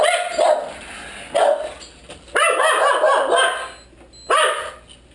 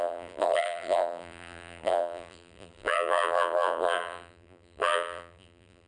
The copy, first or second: second